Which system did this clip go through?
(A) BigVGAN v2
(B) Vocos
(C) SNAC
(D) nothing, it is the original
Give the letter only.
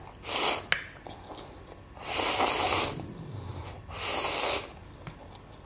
D